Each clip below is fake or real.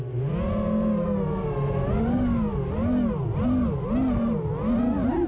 real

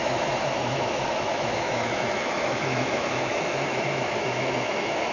fake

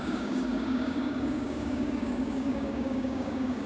fake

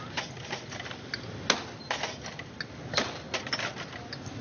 real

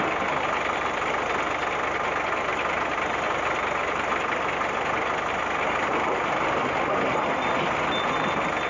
real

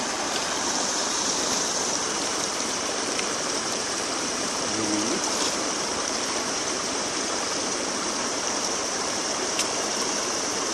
fake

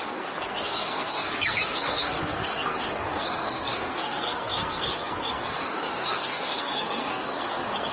fake